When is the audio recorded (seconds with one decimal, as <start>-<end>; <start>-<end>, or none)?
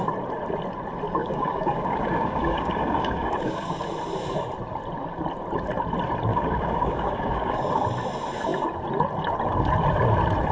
0.0-1.2; 3.8-6.3; 7.7-10.5